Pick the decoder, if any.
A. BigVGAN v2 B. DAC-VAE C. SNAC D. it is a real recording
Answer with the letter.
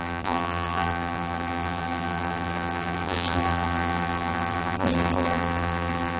A